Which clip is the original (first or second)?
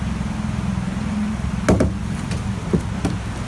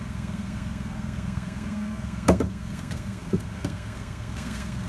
first